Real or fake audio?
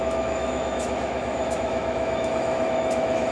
fake